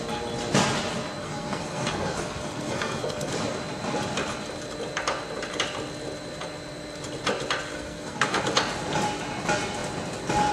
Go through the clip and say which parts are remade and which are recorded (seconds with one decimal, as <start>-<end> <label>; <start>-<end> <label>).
0.0-1.2 recorded; 1.2-3.3 remade; 3.3-7.7 recorded; 7.7-8.4 remade; 8.4-10.5 recorded

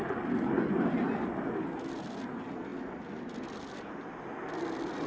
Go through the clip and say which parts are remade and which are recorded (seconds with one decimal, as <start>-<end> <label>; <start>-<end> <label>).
0.0-5.1 recorded

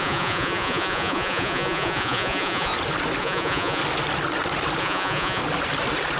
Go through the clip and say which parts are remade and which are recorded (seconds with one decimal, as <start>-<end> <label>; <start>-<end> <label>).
0.0-2.7 remade; 2.7-3.2 recorded; 3.2-3.8 remade; 3.8-4.8 recorded; 4.8-5.4 remade; 5.4-6.2 recorded

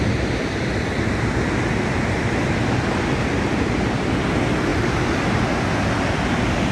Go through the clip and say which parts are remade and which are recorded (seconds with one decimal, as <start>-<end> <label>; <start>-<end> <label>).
0.0-6.7 recorded